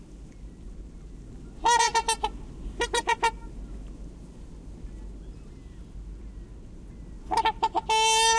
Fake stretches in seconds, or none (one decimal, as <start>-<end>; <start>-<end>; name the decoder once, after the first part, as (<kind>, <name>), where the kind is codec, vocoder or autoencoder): none